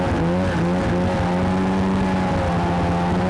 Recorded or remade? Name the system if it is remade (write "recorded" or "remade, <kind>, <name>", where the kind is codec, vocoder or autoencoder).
recorded